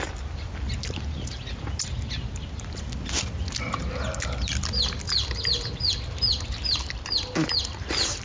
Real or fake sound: real